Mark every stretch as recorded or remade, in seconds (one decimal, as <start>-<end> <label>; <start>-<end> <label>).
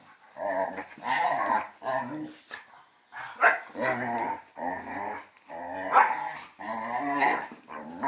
0.0-8.1 recorded